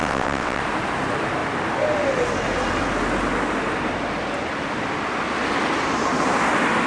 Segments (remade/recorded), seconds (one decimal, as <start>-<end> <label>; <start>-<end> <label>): 0.0-0.6 remade; 0.6-6.9 recorded